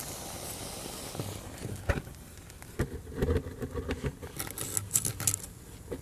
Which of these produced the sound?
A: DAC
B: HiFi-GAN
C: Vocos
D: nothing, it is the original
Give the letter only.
D